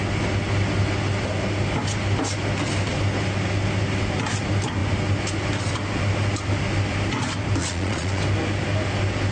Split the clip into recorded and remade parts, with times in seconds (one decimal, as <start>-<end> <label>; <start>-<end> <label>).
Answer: 0.0-7.6 recorded; 7.6-8.2 remade; 8.2-9.3 recorded